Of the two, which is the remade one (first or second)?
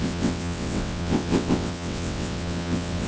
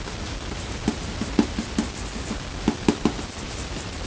first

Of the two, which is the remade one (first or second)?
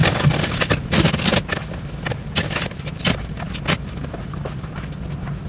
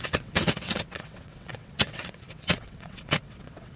second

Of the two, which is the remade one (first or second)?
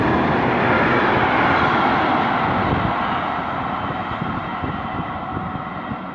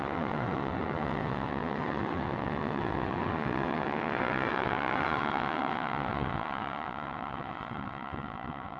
second